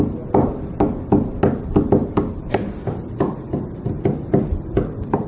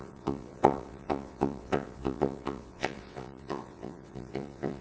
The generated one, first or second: second